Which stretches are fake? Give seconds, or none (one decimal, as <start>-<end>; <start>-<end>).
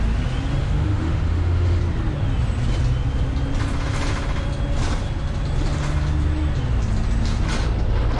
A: 0.6-1.8